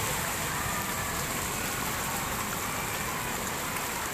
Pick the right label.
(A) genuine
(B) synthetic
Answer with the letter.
A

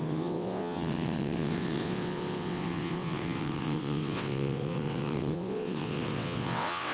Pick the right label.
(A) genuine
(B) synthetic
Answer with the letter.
B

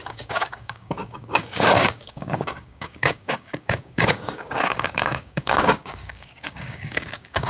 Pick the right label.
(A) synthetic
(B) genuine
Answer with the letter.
A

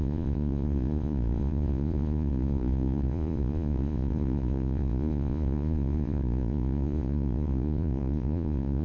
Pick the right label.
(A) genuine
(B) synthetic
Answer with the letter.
B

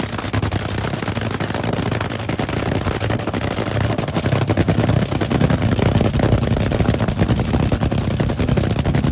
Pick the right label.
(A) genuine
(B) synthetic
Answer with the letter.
A